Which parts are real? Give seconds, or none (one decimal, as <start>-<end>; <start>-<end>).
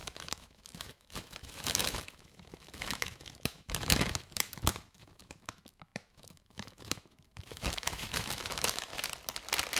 8.9-9.8